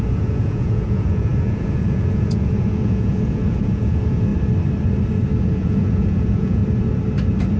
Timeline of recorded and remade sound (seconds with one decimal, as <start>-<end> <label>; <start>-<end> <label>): 0.0-4.3 remade; 4.3-5.4 recorded; 5.4-6.6 remade; 6.6-7.6 recorded